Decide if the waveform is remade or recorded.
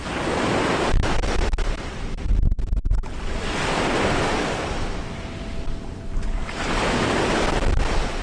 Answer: recorded